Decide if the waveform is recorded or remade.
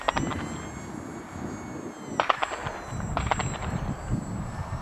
recorded